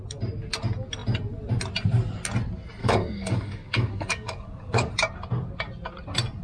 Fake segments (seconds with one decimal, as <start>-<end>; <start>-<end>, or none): 2.8-4.9